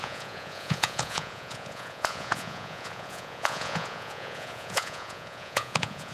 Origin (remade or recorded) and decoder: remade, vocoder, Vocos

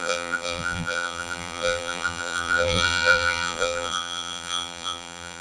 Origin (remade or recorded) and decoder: remade, vocoder, BigVGAN v2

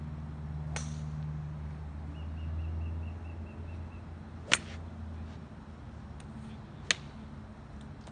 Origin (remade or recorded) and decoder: recorded